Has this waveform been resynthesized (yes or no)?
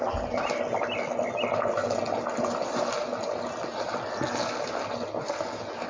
no